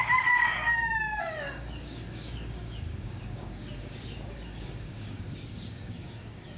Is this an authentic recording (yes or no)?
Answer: no